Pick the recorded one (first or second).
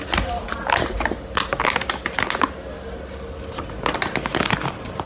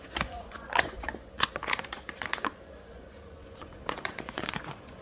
first